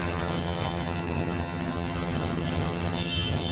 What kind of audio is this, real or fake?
fake